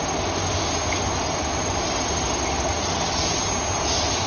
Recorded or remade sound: recorded